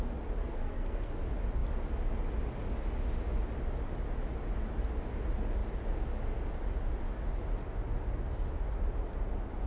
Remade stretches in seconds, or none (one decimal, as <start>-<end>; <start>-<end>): 0.4-1.1